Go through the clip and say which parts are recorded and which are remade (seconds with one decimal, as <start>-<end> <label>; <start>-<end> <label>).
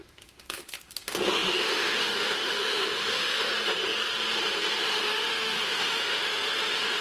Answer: 0.0-3.5 remade; 3.5-4.8 recorded; 4.8-7.0 remade